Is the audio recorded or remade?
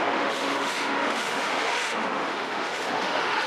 remade